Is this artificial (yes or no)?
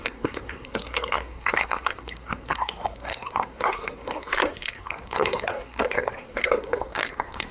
yes